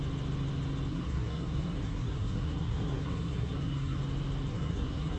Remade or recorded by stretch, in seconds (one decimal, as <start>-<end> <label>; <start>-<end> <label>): 0.0-0.9 recorded; 0.9-4.0 remade; 4.0-4.5 recorded; 4.5-5.2 remade